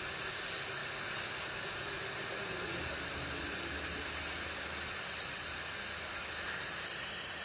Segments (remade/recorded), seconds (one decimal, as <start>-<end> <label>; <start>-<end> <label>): 0.0-7.4 recorded